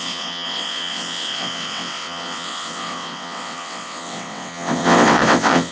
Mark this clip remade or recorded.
remade